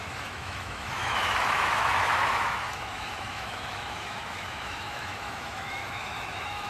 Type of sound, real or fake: fake